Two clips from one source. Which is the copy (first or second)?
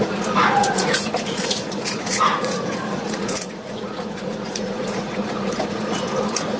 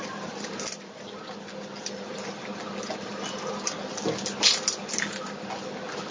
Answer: first